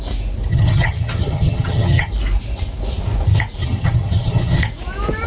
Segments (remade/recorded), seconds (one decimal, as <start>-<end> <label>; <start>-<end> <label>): 0.0-0.5 recorded; 0.5-2.1 remade; 2.1-3.6 recorded; 3.6-4.6 remade; 4.6-5.3 recorded